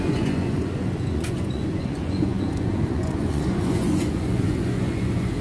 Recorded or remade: remade